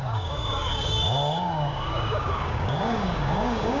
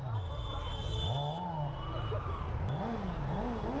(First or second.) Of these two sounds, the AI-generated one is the first